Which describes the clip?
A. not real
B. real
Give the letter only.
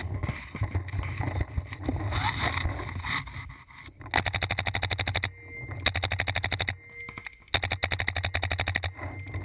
B